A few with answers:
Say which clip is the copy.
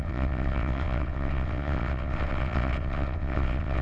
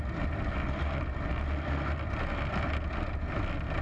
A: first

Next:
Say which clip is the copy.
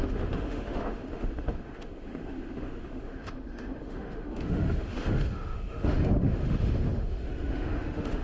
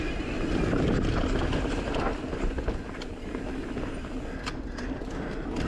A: first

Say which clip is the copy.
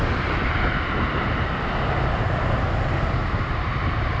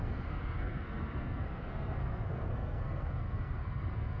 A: second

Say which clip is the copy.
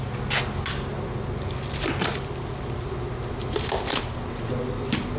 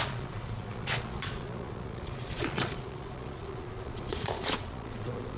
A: second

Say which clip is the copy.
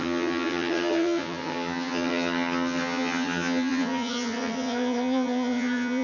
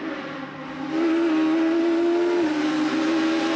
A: first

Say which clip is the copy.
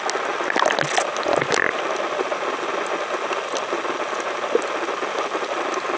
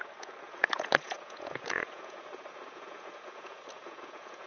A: second